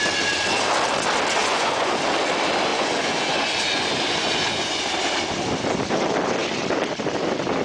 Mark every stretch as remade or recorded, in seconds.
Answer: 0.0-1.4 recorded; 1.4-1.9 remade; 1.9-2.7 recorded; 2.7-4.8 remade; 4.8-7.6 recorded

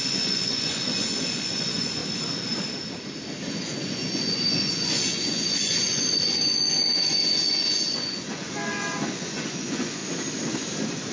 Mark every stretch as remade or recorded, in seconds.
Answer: 0.0-2.0 remade; 2.0-3.5 recorded; 3.5-10.0 remade; 10.0-11.1 recorded

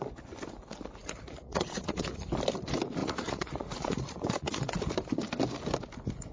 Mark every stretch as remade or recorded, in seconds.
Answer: 0.0-1.0 recorded; 1.0-2.2 remade; 2.2-3.0 recorded; 3.0-4.8 remade; 4.8-6.3 recorded

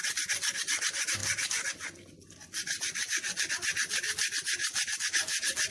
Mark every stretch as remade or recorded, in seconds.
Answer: 0.0-5.7 recorded

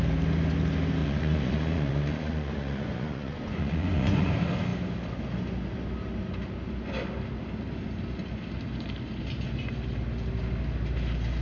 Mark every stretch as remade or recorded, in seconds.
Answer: 0.0-1.0 recorded; 1.0-4.3 remade; 4.3-11.4 recorded

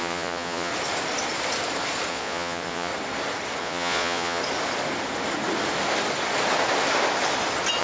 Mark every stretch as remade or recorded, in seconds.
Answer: 0.0-0.7 remade; 0.7-2.1 recorded; 2.1-2.9 remade; 2.9-3.6 recorded; 3.6-4.4 remade; 4.4-7.8 recorded

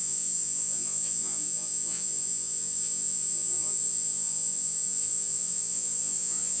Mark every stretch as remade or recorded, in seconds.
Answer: 0.0-6.6 remade